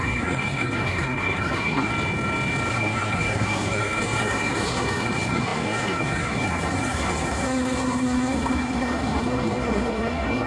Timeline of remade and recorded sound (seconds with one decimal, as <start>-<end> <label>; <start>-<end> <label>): 0.0-1.9 remade; 1.9-2.7 recorded; 2.7-10.5 remade